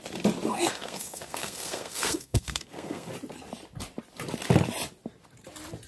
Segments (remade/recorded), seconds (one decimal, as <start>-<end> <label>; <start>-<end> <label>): 0.0-0.5 recorded; 0.5-3.1 remade; 3.1-5.9 recorded